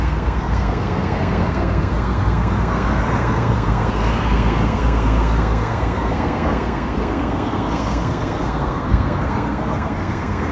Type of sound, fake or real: fake